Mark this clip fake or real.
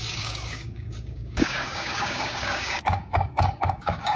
fake